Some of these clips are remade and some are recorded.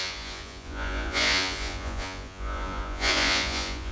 remade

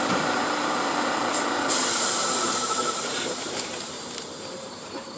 remade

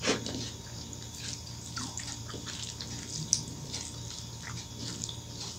recorded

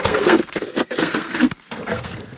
remade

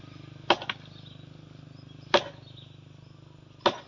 recorded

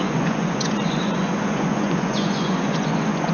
remade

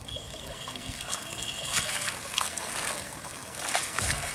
remade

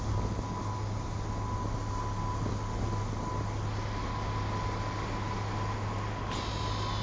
recorded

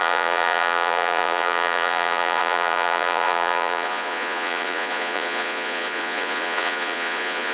remade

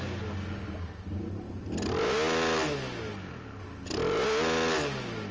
recorded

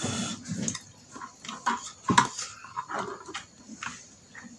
recorded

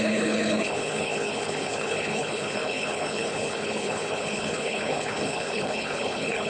remade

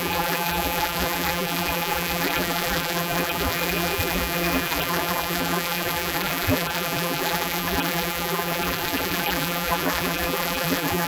remade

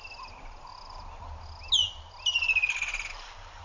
recorded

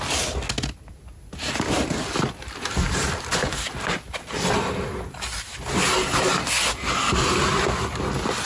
recorded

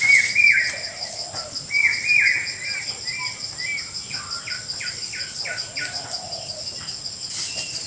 recorded